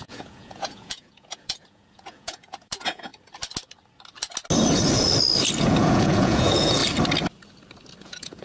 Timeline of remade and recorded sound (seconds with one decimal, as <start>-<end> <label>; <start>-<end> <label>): 0.0-3.1 remade; 3.1-5.6 recorded; 5.6-6.8 remade; 6.8-8.0 recorded; 8.0-8.4 remade